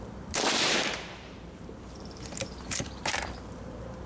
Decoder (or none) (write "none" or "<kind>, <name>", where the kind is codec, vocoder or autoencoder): vocoder, BigVGAN v2